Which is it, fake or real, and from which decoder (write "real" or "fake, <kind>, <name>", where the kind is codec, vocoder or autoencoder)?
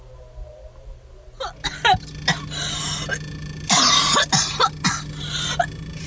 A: real